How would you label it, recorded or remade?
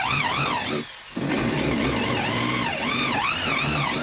recorded